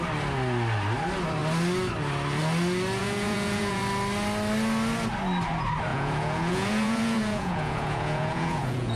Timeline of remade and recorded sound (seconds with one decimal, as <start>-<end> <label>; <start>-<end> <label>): 0.0-3.0 recorded; 3.0-3.8 remade; 3.8-5.9 recorded; 5.9-9.0 remade